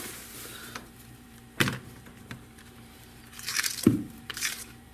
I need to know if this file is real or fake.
fake